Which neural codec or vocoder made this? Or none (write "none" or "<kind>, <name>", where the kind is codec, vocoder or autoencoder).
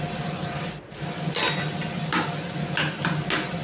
none